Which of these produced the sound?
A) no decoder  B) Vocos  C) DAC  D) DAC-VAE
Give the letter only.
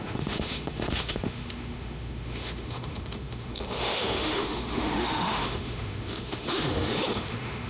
D